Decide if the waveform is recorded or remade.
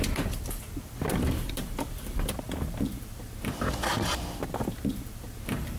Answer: remade